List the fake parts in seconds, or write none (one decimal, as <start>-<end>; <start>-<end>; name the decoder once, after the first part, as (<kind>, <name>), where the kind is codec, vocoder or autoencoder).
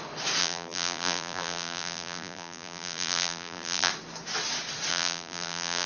0.4-3.9 (vocoder, BigVGAN v2); 4.9-5.9